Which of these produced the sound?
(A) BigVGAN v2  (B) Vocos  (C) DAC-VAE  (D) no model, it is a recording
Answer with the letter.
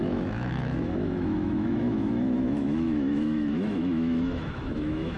C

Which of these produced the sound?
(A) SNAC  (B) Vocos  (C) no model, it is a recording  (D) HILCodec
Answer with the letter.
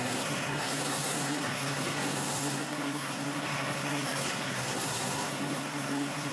A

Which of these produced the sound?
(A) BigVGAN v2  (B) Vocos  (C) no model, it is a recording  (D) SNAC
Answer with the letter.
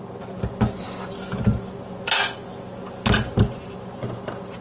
C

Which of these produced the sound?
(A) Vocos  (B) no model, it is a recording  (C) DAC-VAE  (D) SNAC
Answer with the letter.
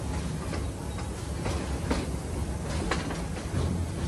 B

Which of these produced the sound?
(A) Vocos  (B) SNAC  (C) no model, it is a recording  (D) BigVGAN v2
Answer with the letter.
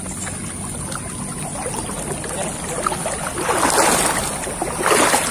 C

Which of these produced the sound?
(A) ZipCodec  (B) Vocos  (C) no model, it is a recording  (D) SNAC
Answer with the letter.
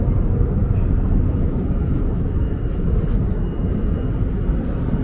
C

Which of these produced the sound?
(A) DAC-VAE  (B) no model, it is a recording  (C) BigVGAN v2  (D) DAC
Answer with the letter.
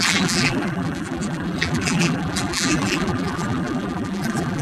C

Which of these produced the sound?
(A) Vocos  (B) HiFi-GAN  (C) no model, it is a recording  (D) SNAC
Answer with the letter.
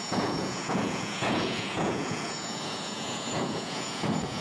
A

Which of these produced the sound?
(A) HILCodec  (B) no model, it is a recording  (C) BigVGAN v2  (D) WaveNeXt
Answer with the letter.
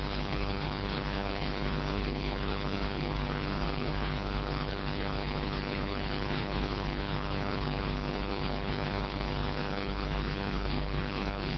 A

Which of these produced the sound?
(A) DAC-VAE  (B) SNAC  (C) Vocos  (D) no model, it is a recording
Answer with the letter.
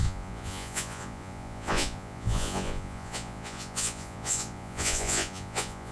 C